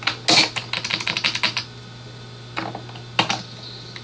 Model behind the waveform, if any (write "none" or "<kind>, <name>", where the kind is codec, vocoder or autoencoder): none